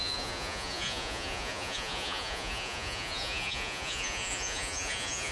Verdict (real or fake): fake